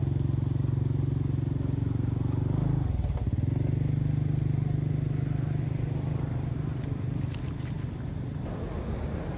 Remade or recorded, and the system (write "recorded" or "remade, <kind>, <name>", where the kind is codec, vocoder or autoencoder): recorded